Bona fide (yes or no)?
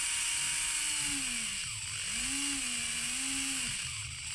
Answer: yes